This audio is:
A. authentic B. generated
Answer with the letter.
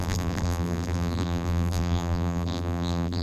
B